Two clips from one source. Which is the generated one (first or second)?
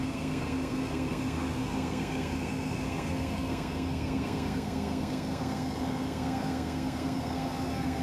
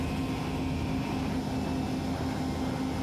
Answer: first